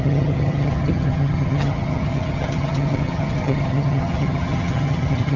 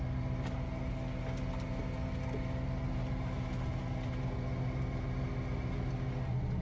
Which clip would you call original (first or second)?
second